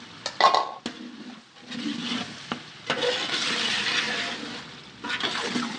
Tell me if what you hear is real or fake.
real